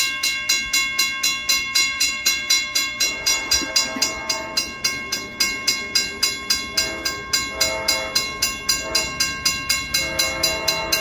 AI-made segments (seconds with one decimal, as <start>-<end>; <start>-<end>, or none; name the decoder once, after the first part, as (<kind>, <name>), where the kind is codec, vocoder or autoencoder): 1.5-3.7 (vocoder, BigVGAN v2)